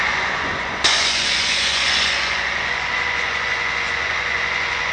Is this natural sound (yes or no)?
no